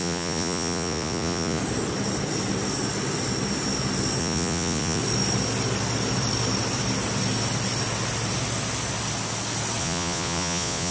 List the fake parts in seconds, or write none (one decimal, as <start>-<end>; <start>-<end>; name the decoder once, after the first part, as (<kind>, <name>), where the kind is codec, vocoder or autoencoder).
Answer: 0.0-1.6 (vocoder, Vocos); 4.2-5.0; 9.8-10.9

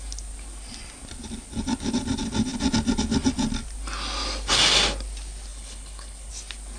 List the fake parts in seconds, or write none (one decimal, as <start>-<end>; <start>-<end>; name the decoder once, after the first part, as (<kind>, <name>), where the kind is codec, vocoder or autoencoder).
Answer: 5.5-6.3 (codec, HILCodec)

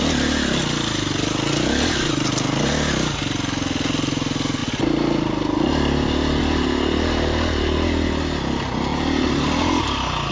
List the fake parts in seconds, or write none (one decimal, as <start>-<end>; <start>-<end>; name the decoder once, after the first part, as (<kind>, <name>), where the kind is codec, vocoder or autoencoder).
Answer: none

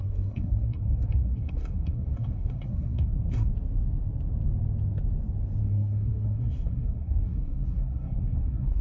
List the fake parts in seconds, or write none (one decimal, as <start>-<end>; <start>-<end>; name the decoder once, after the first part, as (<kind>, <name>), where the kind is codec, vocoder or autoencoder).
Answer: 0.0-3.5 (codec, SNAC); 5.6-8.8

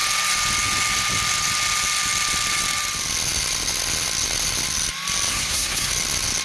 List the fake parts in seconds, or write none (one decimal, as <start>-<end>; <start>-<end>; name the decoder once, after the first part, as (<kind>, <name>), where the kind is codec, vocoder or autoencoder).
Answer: 5.3-5.9 (codec, SNAC)

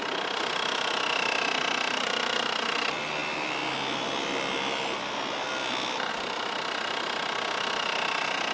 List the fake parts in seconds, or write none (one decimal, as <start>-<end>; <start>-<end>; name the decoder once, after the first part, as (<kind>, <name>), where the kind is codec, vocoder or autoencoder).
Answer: none

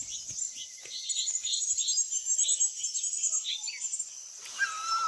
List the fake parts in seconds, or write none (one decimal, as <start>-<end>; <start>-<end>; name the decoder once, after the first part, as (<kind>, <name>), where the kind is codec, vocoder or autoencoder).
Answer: none